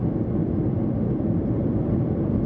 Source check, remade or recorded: recorded